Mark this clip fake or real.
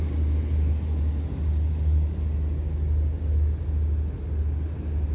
real